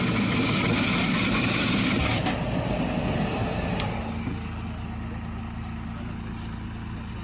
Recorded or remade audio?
recorded